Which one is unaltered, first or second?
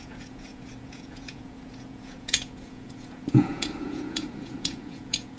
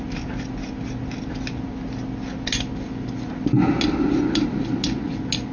second